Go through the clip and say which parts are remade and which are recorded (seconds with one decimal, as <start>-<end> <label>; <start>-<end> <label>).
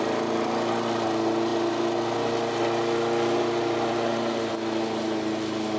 0.0-5.8 recorded